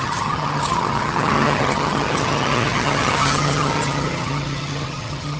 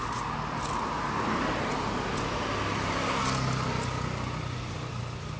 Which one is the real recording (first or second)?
second